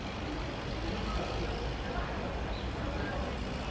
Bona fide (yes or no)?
yes